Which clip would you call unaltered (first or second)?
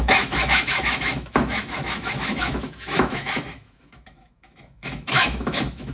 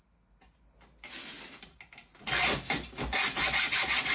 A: second